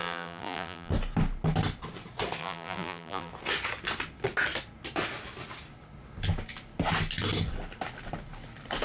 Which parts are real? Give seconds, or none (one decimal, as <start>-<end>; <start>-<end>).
0.9-2.4; 3.3-8.8

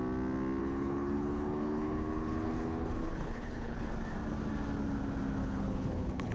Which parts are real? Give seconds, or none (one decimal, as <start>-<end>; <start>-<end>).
0.0-0.6; 3.9-5.4

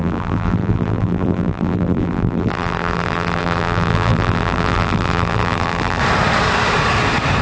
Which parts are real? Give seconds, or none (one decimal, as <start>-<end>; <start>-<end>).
6.0-7.4

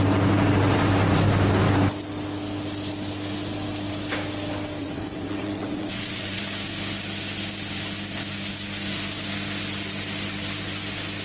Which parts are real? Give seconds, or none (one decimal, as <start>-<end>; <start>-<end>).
0.0-4.8; 6.4-11.2

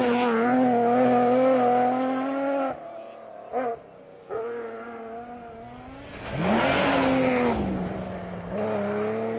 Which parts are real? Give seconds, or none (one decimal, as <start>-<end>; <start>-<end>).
0.0-9.4